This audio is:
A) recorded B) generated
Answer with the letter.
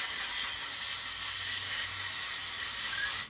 A